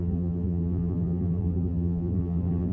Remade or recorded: remade